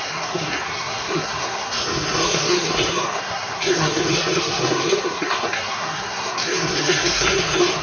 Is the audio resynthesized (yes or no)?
yes